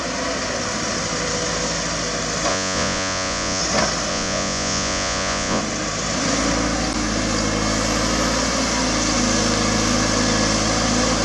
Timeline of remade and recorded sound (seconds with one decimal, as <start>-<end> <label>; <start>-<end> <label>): 0.0-2.5 recorded; 2.5-3.6 remade; 3.6-4.1 recorded; 4.1-5.6 remade; 5.6-11.2 recorded